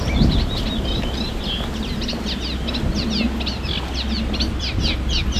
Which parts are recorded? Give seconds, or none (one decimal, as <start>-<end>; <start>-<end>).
1.3-4.5